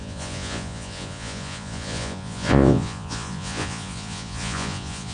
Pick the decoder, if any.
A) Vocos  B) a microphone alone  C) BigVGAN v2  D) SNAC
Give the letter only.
A